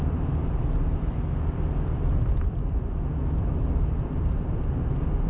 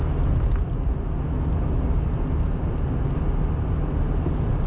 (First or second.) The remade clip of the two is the first